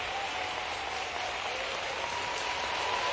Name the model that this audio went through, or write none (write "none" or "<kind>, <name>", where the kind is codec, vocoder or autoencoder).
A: none